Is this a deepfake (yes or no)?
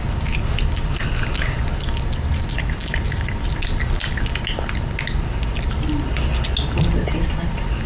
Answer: no